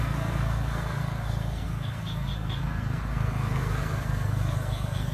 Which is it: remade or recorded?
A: remade